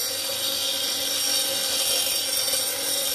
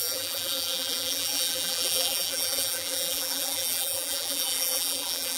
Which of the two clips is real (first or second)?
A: first